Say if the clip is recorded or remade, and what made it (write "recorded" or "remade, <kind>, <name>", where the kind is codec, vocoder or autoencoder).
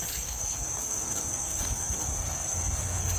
remade, codec, SNAC